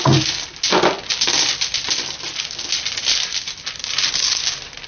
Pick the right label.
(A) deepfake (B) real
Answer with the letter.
B